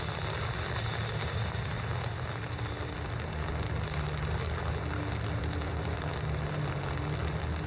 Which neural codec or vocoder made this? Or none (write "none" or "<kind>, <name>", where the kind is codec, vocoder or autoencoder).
none